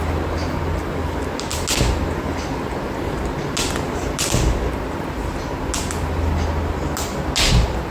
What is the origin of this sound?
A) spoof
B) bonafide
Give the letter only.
B